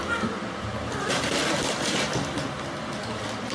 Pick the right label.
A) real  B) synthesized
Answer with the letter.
B